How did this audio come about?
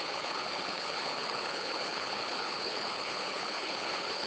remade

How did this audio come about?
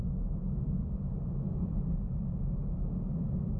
remade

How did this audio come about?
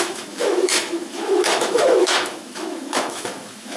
remade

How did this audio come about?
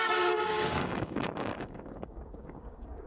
remade